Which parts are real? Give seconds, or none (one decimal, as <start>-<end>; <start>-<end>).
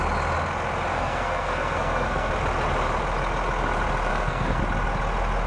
0.0-0.9; 2.3-4.1; 4.6-5.5